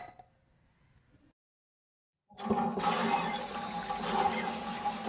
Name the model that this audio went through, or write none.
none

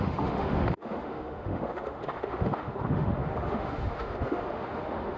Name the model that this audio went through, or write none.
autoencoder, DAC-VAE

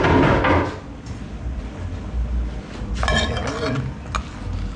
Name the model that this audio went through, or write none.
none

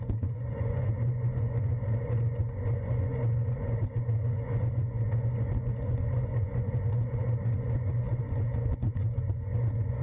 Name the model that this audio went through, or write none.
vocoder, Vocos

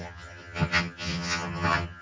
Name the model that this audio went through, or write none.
vocoder, HiFi-GAN